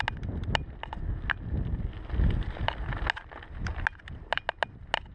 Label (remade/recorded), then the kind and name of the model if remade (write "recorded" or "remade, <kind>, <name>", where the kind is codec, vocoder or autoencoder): recorded